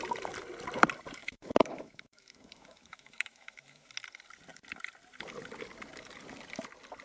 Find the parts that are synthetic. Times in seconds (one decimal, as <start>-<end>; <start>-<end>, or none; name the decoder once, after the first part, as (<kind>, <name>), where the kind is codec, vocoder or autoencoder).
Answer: 1.2-3.9 (autoencoder, DAC-VAE)